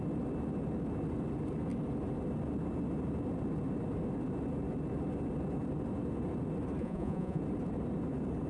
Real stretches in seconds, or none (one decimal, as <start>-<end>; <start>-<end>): 0.0-6.8; 7.4-8.5